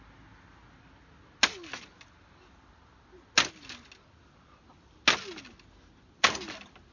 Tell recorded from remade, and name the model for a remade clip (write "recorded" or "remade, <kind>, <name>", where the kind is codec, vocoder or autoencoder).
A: recorded